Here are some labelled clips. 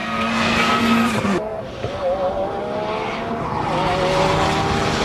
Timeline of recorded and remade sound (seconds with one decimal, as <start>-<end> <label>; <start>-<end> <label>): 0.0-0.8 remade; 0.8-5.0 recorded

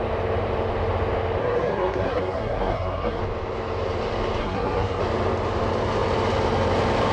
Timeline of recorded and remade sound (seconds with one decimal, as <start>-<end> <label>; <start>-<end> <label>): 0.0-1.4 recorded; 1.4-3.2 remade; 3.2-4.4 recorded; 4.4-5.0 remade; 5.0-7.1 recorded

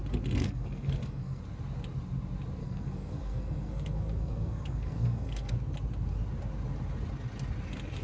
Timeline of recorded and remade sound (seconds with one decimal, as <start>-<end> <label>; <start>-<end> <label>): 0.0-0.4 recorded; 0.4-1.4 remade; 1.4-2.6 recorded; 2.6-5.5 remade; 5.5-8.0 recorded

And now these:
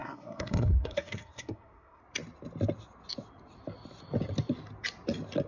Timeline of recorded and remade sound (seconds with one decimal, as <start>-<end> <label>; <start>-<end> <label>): 0.0-2.0 remade; 2.0-5.5 recorded

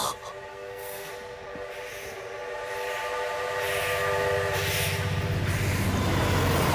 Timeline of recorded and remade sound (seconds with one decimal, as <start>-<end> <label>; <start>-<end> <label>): 0.0-0.5 recorded; 0.5-1.1 remade; 1.1-6.7 recorded

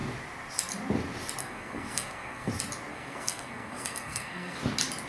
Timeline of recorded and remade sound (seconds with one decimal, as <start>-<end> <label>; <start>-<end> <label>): 0.0-1.4 recorded; 1.4-2.5 remade; 2.5-2.9 recorded; 2.9-4.6 remade; 4.6-5.1 recorded